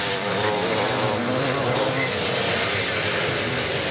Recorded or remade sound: remade